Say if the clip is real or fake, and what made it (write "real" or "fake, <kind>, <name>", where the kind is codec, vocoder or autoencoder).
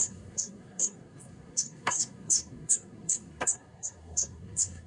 fake, codec, SNAC